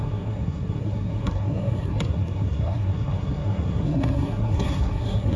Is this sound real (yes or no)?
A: no